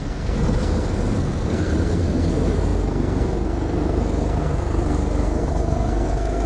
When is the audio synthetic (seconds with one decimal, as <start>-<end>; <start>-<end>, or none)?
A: 0.0-6.5